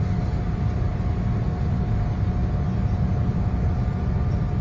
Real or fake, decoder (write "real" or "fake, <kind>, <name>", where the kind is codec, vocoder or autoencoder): real